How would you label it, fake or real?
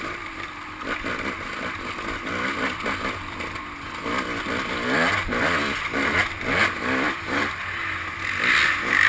real